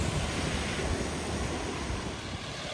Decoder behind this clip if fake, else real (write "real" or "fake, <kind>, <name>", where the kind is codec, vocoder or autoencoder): fake, vocoder, BigVGAN v2